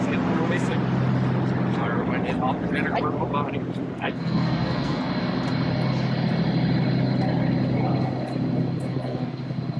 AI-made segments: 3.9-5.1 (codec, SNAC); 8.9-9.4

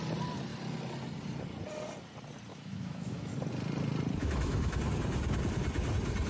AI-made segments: 2.5-3.3 (autoencoder, DAC-VAE); 4.2-4.8

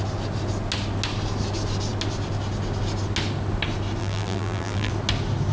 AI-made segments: 4.0-4.9 (vocoder, BigVGAN v2)

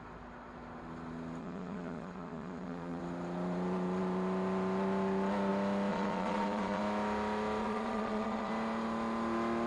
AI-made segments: 1.4-3.0 (vocoder, Vocos); 5.9-6.8; 7.6-8.5

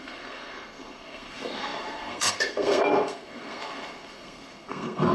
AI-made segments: 0.0-5.1 (codec, SNAC)